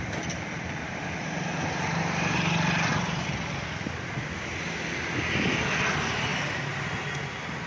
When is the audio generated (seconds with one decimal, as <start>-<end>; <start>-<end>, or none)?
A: none